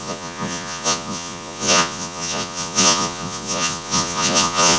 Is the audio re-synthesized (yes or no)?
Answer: yes